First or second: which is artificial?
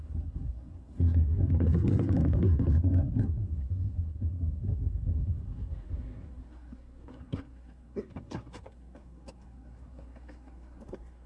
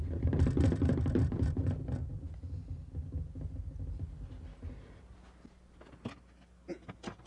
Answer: first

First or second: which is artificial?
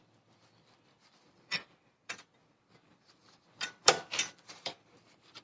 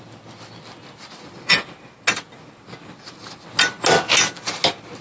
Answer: first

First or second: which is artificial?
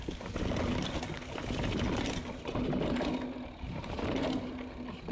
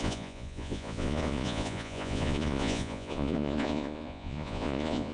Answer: second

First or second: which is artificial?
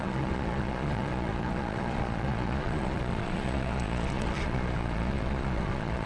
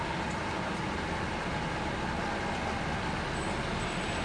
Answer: first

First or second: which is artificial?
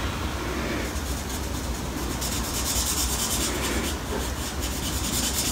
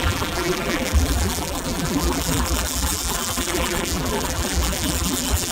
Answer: second